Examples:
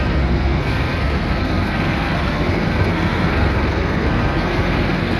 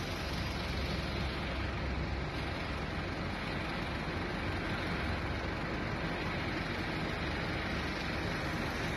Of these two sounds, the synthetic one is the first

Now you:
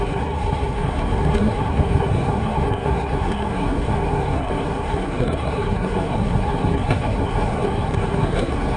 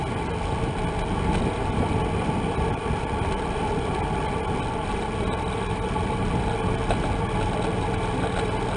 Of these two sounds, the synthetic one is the first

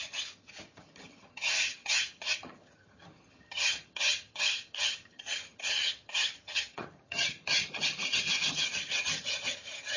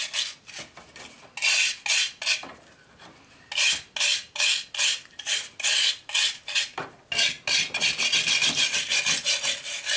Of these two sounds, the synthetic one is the first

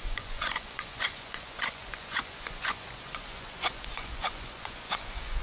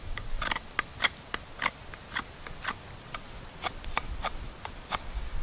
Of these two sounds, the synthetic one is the first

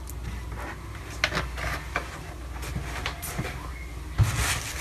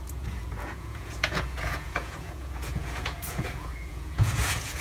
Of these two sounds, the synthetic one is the second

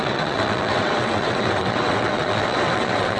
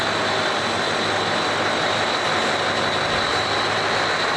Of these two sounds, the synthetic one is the first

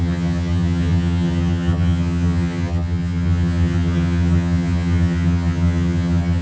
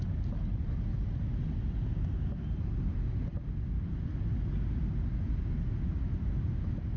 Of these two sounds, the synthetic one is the first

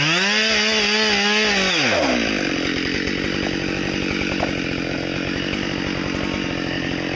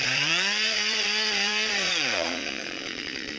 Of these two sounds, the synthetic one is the second